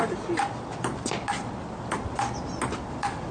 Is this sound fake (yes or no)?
no